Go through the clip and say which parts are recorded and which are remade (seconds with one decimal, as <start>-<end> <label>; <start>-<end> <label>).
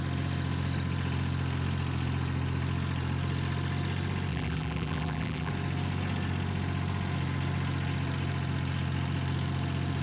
0.0-4.3 recorded; 4.3-5.5 remade; 5.5-10.0 recorded